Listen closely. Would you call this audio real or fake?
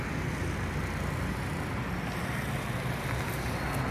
real